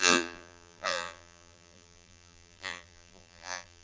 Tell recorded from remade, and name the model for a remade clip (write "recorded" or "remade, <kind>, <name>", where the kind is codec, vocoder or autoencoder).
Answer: remade, vocoder, BigVGAN v2